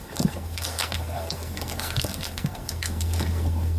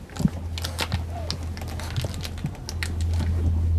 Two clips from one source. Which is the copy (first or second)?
first